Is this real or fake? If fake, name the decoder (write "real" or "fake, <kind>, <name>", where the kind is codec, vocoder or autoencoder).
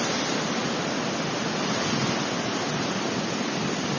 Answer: fake, vocoder, BigVGAN v2